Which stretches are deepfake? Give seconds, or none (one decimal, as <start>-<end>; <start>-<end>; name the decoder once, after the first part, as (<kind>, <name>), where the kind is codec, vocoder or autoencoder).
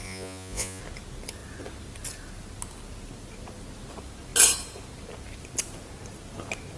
0.0-0.8 (vocoder, Vocos)